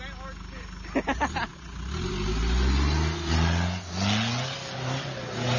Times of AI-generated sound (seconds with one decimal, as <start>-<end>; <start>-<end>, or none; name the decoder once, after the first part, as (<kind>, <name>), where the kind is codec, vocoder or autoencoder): none

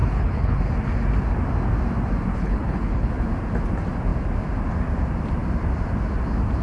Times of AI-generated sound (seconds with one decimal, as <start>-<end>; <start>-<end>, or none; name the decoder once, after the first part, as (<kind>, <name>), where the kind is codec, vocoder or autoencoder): 0.0-0.6 (codec, HILCodec); 2.3-3.2

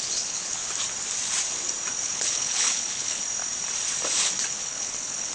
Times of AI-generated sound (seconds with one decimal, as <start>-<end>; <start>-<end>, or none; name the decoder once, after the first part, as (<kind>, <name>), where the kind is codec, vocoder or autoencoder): 0.0-0.6 (codec, HILCodec); 2.0-3.2; 4.5-5.3

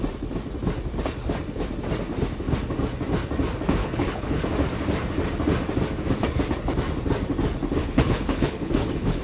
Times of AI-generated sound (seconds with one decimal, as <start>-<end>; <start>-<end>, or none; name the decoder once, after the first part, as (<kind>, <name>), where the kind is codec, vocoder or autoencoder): 3.8-4.4 (codec, HILCodec); 7.8-9.2

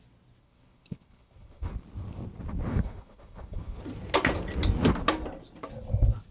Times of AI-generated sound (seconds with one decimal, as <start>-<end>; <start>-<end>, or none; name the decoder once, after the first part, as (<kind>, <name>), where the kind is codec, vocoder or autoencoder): 0.4-1.7 (codec, HILCodec); 2.7-3.8

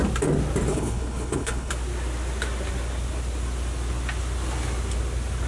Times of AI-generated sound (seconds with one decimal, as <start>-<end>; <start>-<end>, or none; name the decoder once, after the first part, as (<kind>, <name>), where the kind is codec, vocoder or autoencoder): 0.7-1.7 (codec, HILCodec)

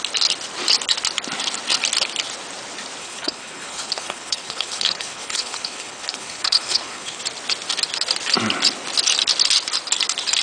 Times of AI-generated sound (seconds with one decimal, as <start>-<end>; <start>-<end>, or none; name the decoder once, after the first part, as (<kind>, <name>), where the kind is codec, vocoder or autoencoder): 3.0-7.2 (codec, HILCodec)

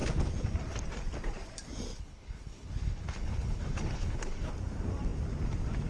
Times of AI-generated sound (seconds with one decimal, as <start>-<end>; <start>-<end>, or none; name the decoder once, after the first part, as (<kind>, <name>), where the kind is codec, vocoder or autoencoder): 1.9-4.5 (codec, HILCodec)